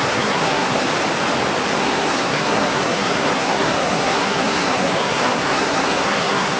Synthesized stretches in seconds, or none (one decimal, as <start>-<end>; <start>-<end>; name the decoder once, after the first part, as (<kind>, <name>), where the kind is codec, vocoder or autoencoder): 0.0-0.9 (codec, SNAC); 1.8-6.6